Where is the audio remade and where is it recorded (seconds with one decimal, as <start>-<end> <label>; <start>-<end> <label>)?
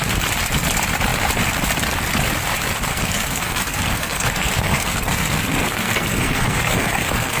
0.0-2.9 recorded; 2.9-7.4 remade